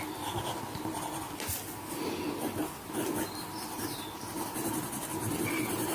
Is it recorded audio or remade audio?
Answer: recorded